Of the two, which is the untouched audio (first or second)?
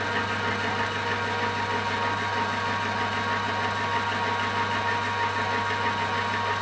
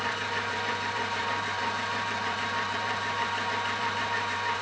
first